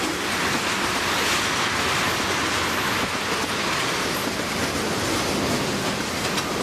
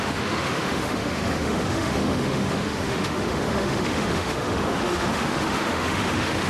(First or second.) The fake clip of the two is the second